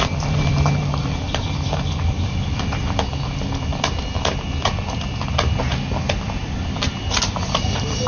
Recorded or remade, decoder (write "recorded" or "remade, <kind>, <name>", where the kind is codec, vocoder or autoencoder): remade, vocoder, BigVGAN v2